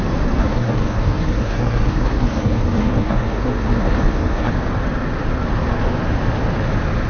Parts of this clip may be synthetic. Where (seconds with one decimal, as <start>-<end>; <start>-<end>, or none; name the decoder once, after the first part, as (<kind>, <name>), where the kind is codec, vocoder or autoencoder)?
0.4-4.5 (codec, SNAC)

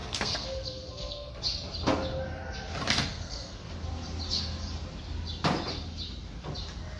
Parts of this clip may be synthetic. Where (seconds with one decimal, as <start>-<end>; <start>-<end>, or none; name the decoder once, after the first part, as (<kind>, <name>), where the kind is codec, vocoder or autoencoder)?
0.0-1.3 (codec, SNAC); 3.1-3.7

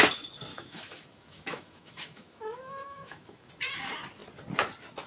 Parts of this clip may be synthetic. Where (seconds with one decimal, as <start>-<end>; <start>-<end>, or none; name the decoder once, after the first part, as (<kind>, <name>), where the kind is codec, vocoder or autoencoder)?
0.5-3.5 (autoencoder, DAC-VAE)

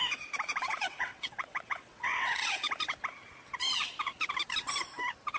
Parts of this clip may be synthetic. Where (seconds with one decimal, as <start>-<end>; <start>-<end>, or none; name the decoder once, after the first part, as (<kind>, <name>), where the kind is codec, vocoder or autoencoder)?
0.6-2.7 (vocoder, WaveNeXt)

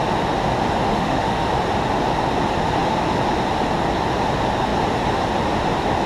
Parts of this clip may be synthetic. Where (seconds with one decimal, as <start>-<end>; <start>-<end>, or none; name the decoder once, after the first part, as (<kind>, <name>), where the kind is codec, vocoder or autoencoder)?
0.9-1.5 (autoencoder, DAC-VAE)

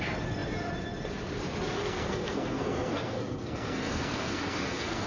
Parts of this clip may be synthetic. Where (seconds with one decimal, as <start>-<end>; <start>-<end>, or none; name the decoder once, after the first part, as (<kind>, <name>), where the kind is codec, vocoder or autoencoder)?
1.8-5.1 (codec, SNAC)